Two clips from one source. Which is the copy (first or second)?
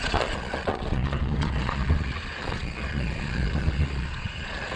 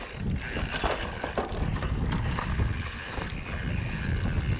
first